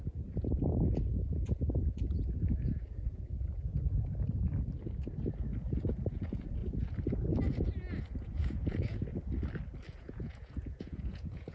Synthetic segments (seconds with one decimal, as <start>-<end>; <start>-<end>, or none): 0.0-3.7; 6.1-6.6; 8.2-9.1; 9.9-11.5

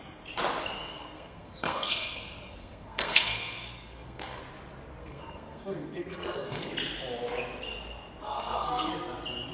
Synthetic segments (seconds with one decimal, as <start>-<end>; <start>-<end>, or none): 0.8-4.4; 5.0-6.7; 8.2-8.9

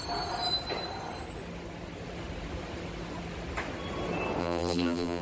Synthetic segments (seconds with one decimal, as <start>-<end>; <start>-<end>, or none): 4.4-5.2